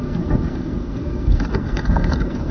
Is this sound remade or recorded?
remade